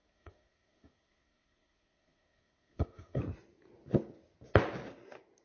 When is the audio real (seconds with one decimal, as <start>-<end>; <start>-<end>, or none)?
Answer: 3.2-5.4